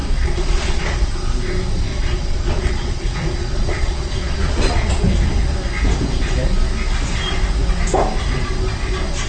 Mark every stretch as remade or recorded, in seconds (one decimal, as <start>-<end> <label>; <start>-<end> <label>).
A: 0.0-1.1 remade; 1.1-1.9 recorded; 1.9-5.0 remade; 5.0-9.3 recorded